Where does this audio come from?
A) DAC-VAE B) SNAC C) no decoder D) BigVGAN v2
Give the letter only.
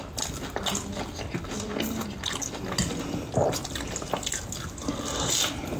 C